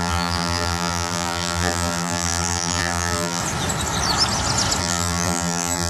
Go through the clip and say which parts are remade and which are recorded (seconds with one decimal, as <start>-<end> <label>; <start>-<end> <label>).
0.0-3.4 remade; 3.4-4.8 recorded; 4.8-5.9 remade